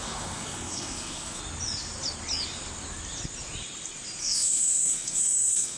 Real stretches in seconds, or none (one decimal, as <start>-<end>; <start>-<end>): 1.4-4.2